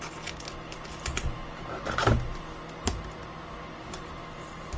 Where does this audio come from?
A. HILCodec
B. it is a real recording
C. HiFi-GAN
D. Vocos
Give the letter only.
B